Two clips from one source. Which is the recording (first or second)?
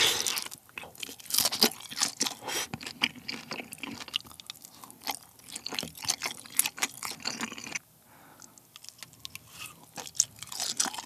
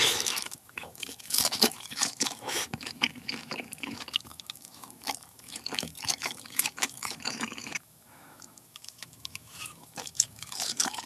first